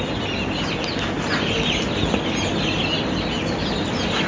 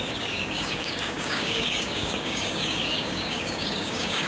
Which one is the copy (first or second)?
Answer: second